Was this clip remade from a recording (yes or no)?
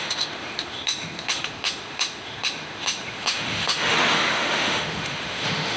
yes